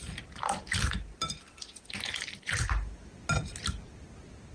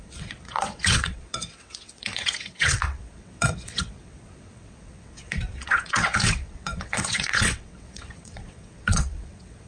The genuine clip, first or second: first